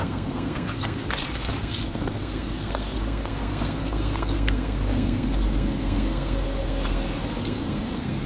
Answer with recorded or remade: remade